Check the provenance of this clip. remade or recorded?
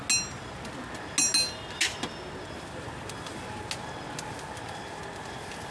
recorded